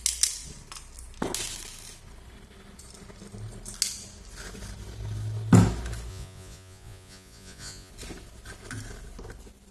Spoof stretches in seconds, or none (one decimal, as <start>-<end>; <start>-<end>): 6.1-7.9